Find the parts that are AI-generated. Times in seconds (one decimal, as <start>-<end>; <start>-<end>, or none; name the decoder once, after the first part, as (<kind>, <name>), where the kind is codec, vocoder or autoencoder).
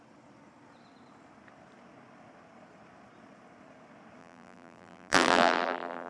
4.2-6.1 (vocoder, BigVGAN v2)